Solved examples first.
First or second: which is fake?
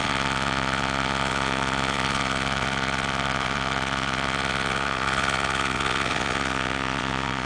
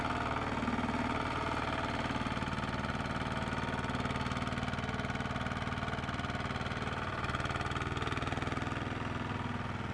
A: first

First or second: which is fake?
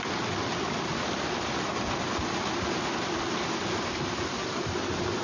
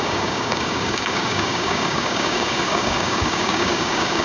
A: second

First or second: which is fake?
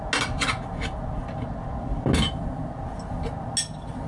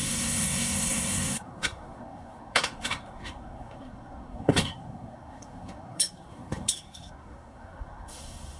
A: second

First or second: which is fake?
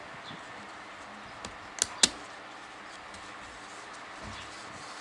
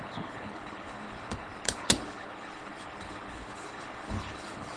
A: second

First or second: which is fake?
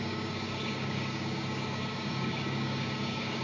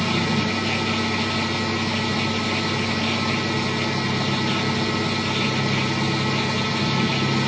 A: first